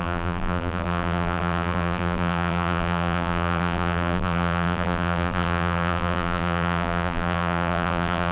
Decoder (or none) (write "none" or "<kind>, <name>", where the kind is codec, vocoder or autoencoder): vocoder, BigVGAN v2